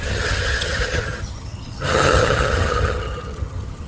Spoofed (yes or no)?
yes